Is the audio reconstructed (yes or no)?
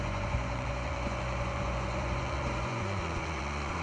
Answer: yes